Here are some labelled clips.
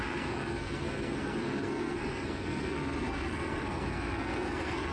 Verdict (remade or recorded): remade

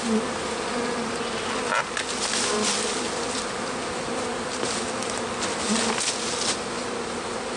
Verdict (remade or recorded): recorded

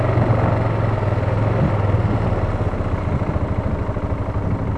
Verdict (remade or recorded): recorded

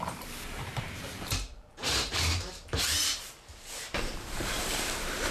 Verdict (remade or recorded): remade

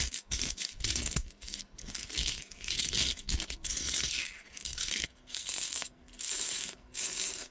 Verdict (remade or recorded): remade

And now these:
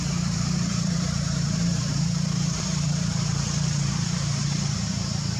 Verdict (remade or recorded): remade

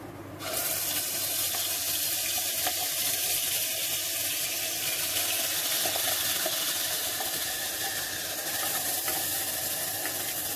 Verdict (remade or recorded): recorded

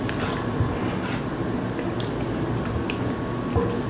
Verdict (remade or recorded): recorded